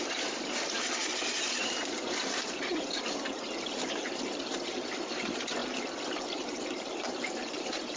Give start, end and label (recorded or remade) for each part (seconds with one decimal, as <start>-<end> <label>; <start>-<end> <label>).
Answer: 0.0-2.7 recorded; 2.7-4.4 remade; 4.4-5.6 recorded; 5.6-8.0 remade